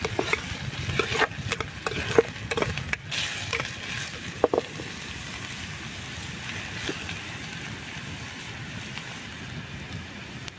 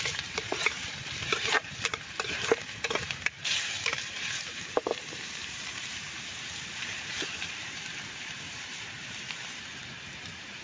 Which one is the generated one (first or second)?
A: second